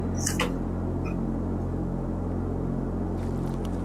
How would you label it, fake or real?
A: real